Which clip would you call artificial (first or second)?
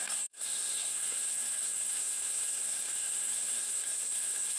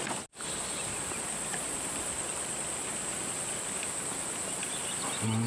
first